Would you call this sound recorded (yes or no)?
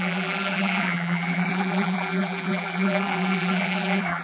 no